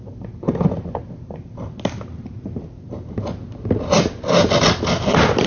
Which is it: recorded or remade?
recorded